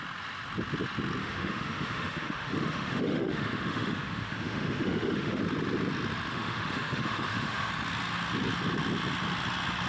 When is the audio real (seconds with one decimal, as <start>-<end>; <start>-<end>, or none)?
0.0-1.2; 5.4-6.3; 7.7-9.9